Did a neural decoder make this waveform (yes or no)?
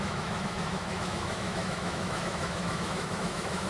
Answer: yes